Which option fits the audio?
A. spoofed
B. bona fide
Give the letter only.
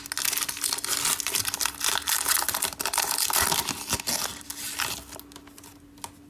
B